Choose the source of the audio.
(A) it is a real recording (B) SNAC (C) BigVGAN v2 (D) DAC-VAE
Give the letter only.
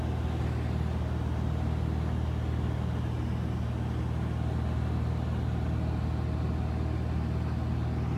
A